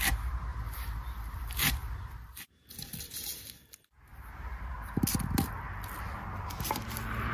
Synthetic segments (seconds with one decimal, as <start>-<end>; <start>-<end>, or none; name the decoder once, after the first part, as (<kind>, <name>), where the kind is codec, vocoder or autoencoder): 0.5-2.5 (vocoder, BigVGAN v2)